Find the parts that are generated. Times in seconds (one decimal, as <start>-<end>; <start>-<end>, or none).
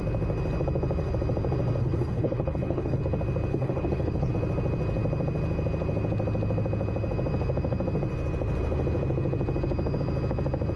1.8-3.0; 3.5-4.3